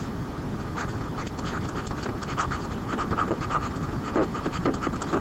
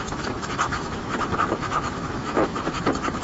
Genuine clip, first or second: first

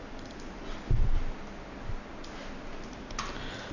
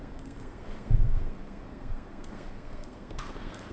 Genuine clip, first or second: first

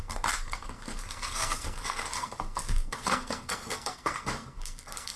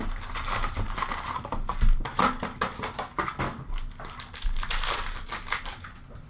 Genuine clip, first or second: second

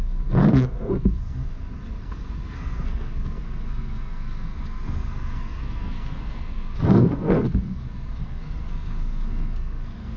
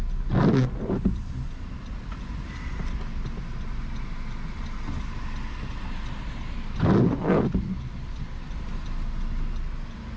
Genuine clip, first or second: second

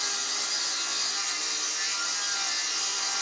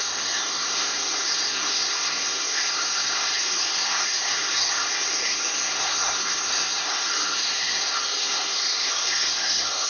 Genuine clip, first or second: first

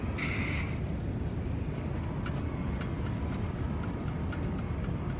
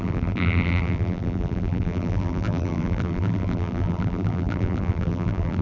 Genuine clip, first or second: first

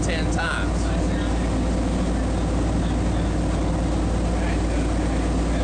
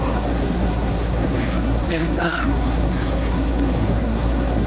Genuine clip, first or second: first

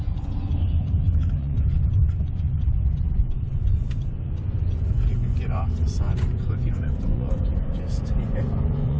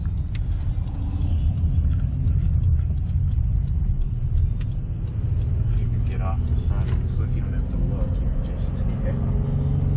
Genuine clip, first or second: second